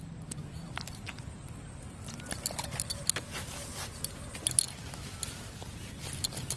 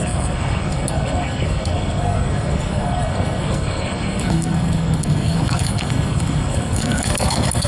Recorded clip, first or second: first